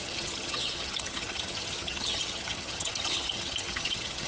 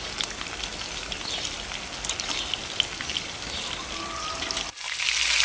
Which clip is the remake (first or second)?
first